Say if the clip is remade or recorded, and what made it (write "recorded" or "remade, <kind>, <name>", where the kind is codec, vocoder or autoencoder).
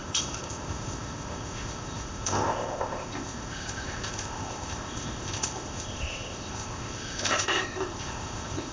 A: remade, codec, ZipCodec